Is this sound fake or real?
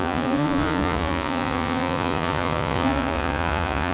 fake